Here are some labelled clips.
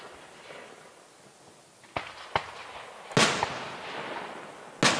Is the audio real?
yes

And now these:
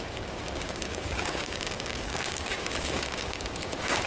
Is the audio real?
no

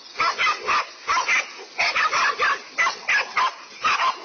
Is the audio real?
yes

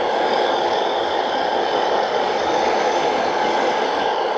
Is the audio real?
no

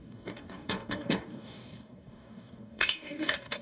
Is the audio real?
no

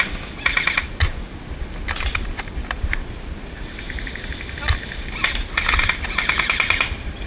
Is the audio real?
yes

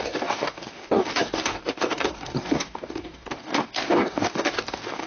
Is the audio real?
no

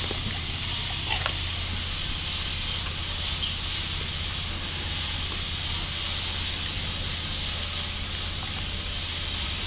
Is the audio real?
yes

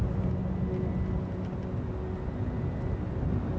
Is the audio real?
yes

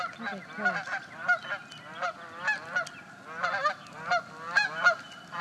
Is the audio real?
yes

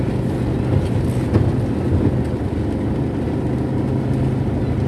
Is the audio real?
yes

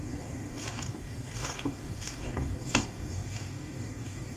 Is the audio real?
no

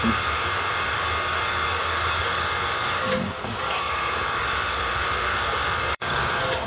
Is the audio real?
no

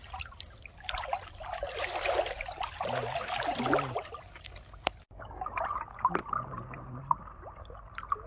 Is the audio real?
yes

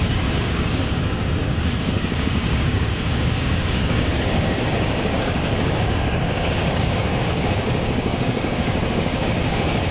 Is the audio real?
no